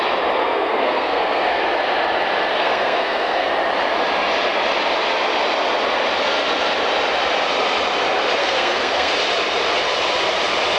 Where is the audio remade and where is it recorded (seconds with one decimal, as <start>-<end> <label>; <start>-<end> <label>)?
0.0-0.4 recorded; 0.4-1.6 remade; 1.6-2.5 recorded; 2.5-3.5 remade; 3.5-8.4 recorded; 8.4-9.1 remade; 9.1-10.8 recorded